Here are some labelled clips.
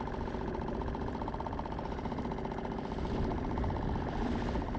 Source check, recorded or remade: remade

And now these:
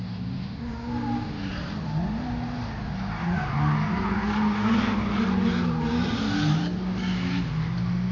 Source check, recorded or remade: recorded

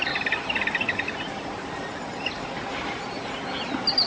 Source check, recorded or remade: recorded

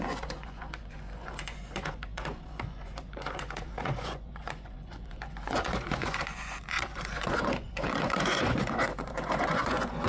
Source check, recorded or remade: remade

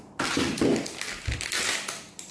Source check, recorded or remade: recorded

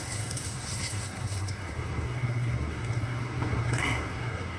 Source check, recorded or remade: remade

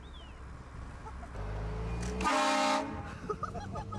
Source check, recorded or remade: recorded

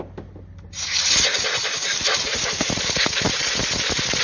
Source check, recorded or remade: recorded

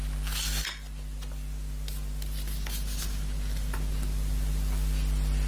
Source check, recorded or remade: recorded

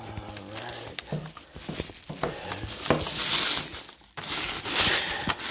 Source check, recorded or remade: recorded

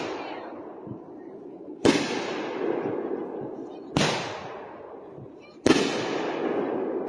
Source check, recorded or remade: recorded